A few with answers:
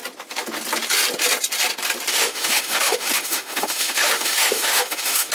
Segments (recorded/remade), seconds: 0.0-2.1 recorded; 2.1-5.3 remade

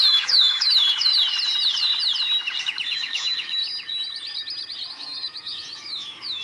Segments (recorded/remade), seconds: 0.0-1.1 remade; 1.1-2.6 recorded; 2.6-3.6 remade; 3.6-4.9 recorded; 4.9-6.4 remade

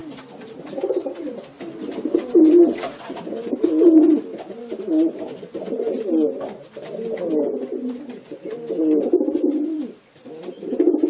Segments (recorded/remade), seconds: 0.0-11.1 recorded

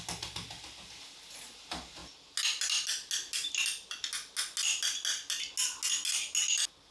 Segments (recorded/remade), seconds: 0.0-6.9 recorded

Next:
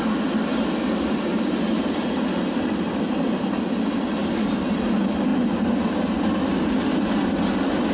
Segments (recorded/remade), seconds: 0.0-7.9 recorded

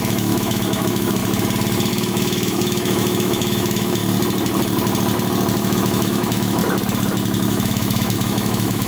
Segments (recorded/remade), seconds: 0.0-1.2 remade; 1.2-1.9 recorded; 1.9-4.0 remade; 4.0-5.6 recorded; 5.6-6.6 remade; 6.6-7.5 recorded; 7.5-8.9 remade